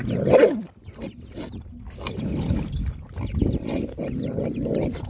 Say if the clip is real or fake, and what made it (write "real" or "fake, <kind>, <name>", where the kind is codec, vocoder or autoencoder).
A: real